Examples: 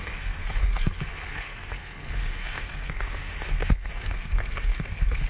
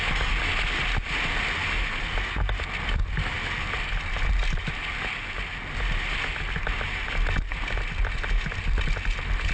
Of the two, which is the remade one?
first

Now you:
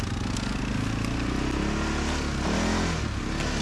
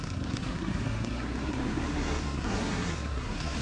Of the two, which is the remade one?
second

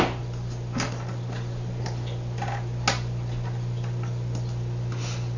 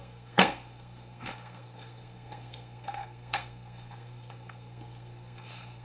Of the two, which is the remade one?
second